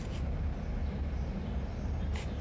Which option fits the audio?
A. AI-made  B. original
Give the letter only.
B